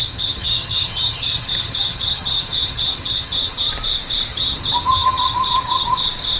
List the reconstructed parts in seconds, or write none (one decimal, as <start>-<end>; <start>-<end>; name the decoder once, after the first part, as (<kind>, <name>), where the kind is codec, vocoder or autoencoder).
0.0-3.7 (vocoder, HiFi-GAN); 4.3-6.0